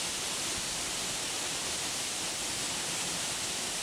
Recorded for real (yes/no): yes